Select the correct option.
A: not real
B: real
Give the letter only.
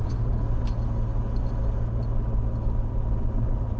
B